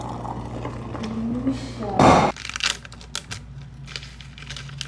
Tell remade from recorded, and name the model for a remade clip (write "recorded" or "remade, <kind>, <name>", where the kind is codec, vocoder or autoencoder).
recorded